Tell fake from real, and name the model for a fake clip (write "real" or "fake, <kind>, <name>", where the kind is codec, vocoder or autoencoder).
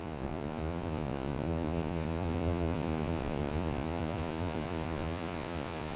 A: fake, vocoder, Vocos